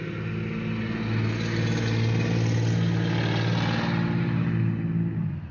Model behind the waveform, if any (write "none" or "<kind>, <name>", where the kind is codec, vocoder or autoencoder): none